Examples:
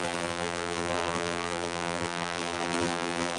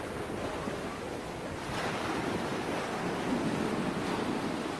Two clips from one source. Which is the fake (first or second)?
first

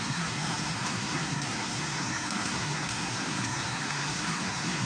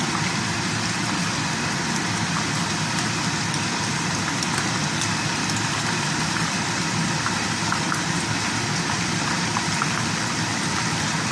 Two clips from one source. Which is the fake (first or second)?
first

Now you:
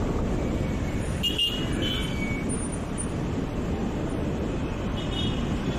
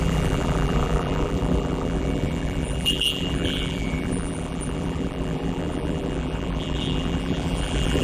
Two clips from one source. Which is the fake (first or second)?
second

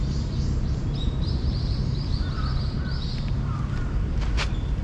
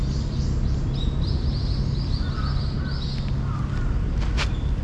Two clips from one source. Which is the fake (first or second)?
first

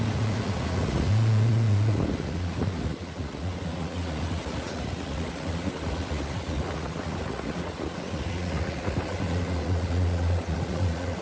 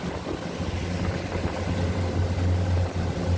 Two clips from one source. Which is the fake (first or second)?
first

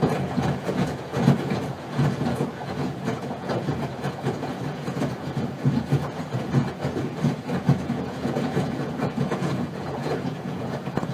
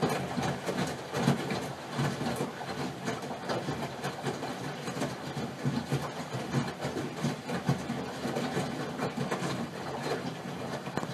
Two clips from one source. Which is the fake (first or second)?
first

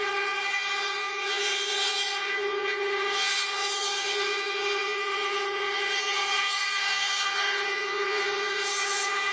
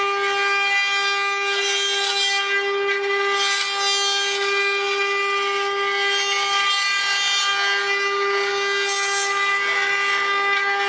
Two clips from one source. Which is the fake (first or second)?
first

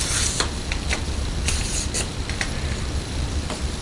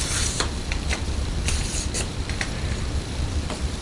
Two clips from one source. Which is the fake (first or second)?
second